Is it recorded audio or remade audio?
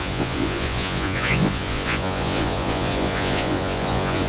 remade